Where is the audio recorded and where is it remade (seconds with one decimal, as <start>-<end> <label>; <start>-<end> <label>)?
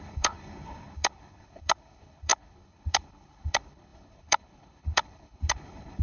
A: 0.0-6.0 remade